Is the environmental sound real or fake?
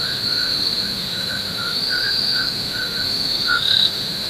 fake